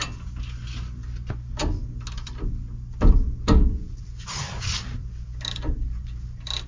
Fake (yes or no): no